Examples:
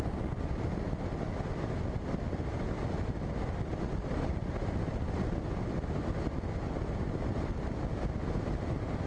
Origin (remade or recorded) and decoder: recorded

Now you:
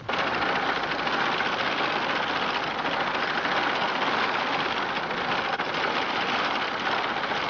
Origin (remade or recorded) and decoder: recorded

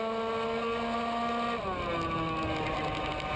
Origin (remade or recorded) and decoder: recorded